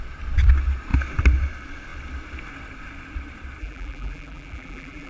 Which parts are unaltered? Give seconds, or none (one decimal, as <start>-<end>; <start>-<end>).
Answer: 0.0-3.6